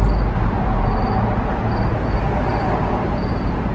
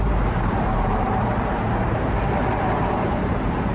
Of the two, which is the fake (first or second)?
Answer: second